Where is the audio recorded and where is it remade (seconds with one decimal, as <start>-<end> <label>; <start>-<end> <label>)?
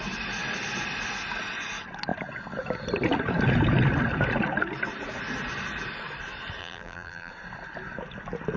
0.0-6.6 recorded; 6.6-7.3 remade; 7.3-8.6 recorded